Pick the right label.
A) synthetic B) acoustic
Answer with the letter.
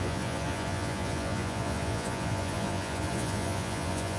A